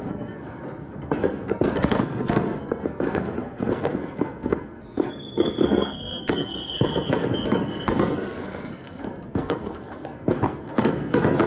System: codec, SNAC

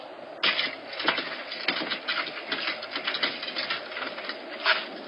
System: none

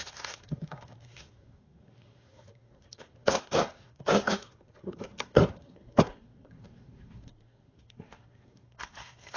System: codec, SNAC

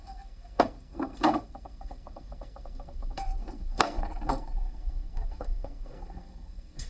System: codec, SNAC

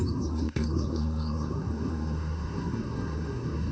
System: codec, SNAC